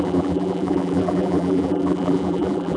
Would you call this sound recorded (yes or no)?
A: no